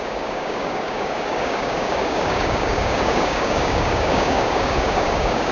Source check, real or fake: fake